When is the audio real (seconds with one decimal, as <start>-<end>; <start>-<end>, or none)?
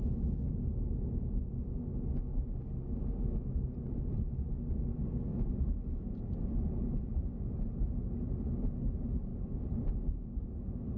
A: 0.0-11.0